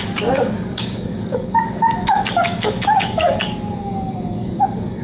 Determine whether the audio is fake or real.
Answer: fake